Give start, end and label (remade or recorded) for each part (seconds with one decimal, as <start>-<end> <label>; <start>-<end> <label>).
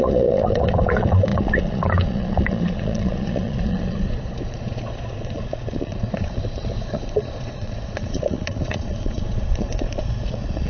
0.0-10.7 remade